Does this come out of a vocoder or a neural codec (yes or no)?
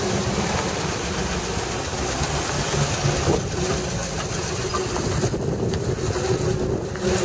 no